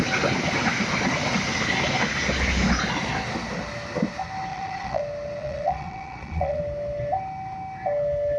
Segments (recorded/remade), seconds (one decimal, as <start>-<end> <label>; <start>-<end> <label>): 0.0-4.5 recorded; 4.5-5.0 remade; 5.0-5.4 recorded; 5.4-6.6 remade; 6.6-8.4 recorded